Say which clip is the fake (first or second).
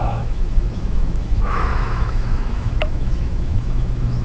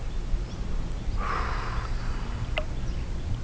first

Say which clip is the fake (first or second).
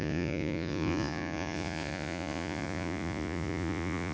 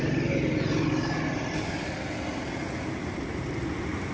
first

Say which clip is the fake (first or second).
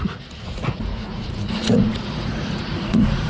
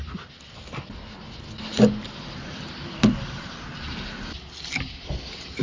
first